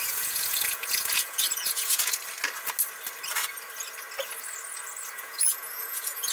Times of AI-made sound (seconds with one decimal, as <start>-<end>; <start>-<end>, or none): 0.0-2.2; 5.1-6.3